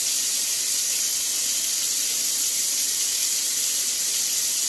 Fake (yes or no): no